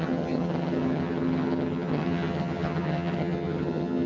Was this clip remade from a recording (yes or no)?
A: yes